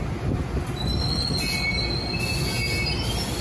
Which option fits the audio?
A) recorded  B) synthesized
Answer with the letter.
A